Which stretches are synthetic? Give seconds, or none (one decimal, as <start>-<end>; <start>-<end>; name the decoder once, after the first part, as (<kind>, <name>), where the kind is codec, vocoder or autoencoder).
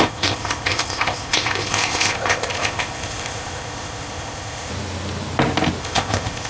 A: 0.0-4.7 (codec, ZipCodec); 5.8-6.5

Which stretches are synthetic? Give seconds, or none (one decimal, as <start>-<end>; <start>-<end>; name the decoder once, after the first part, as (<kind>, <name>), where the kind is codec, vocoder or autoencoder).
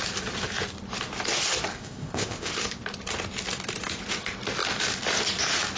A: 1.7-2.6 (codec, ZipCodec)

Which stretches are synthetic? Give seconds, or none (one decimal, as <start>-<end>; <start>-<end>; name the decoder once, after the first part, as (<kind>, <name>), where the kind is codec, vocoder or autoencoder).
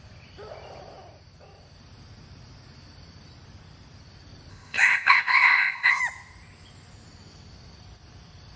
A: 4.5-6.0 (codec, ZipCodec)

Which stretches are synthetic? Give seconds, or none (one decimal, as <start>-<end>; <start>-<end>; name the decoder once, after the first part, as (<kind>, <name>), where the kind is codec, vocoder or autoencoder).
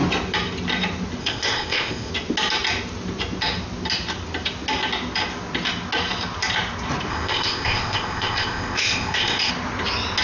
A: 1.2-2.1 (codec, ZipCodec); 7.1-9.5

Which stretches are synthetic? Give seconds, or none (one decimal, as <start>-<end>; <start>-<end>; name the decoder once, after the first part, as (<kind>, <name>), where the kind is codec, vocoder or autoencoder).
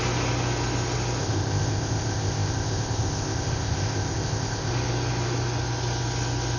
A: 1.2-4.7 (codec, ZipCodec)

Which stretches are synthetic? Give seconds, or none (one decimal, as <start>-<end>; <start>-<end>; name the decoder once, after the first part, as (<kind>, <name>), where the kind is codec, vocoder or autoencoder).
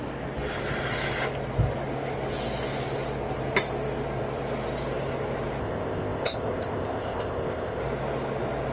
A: 5.6-7.8 (codec, ZipCodec)